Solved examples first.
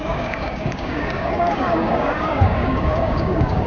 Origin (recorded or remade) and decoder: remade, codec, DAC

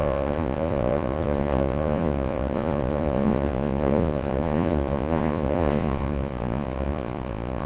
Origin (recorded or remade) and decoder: remade, vocoder, Vocos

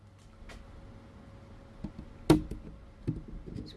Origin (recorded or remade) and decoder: recorded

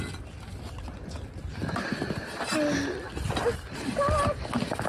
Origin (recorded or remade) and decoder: recorded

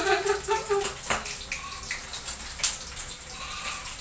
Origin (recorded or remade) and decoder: recorded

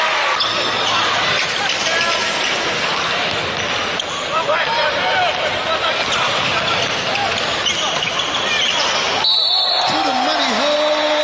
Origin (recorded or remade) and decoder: recorded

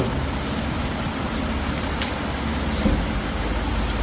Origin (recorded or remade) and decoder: recorded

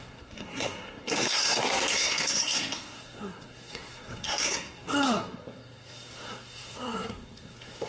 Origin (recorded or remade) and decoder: remade, codec, SNAC